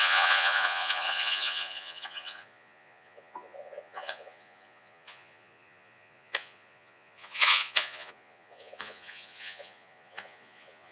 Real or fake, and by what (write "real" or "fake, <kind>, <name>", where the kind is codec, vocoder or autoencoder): fake, vocoder, Vocos